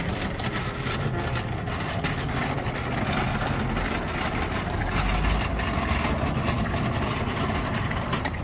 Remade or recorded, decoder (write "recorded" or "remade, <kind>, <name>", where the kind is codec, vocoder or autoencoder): recorded